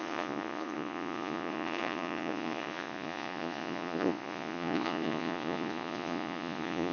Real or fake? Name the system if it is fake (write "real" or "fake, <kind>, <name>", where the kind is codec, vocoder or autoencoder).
fake, vocoder, Vocos